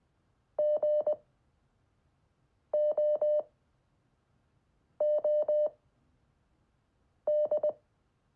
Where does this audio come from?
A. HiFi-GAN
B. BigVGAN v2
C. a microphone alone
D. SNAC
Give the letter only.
C